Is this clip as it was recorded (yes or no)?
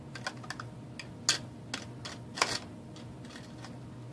yes